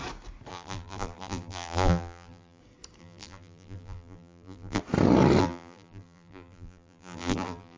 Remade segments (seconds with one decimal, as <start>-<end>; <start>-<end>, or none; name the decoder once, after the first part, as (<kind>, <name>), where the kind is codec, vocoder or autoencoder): 0.5-2.6 (vocoder, BigVGAN v2); 3.0-4.8; 5.4-7.8